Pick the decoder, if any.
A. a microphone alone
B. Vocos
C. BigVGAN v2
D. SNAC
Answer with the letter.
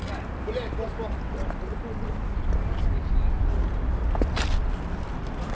A